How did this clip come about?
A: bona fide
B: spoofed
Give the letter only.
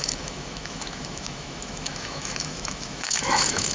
B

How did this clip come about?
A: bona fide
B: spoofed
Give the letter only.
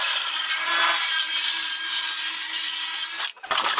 A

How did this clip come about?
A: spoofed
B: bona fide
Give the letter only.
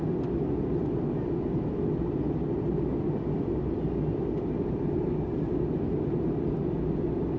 B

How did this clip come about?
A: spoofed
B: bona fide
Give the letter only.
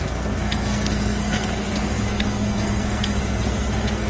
A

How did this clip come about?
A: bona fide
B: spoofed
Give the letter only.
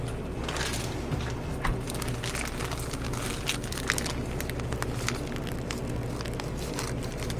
A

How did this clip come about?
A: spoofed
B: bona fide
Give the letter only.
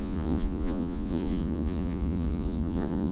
A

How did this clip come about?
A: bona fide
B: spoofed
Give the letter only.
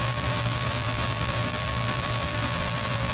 B